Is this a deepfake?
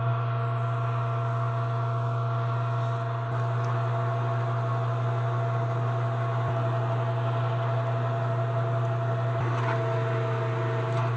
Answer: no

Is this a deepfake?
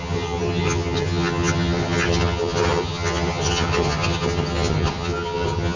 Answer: yes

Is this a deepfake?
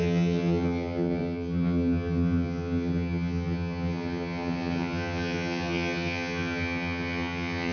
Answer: yes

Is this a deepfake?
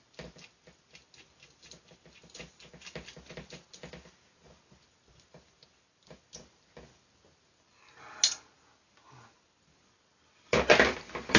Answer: no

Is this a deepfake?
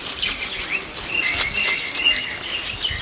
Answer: no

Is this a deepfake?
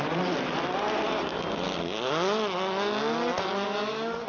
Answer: no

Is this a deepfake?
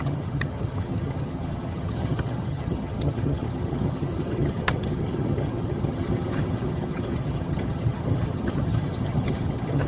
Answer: yes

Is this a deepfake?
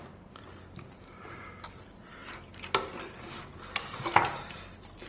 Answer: no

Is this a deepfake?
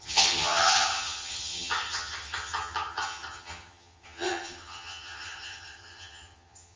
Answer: yes